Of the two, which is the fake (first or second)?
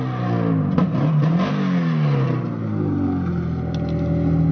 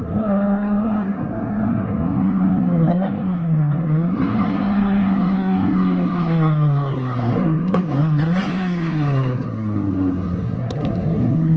second